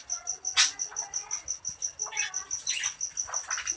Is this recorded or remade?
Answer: recorded